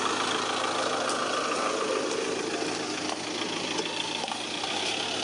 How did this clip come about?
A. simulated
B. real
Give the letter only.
B